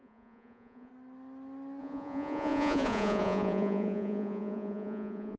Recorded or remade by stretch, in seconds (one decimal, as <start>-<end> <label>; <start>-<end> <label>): 0.0-0.9 remade; 0.9-1.8 recorded; 1.8-5.4 remade